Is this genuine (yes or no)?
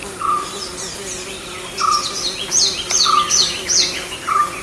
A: yes